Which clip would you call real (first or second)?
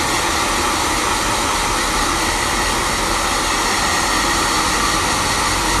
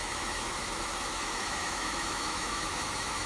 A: first